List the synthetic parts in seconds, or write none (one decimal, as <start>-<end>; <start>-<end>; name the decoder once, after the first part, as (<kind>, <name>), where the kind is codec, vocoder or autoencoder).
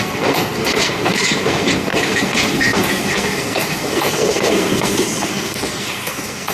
0.0-6.5 (codec, SNAC)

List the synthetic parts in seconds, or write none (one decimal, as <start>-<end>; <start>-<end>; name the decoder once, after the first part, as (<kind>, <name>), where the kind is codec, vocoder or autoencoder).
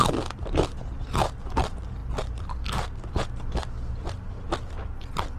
none